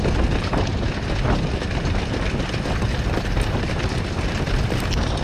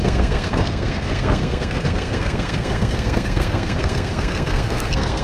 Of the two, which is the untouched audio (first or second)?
first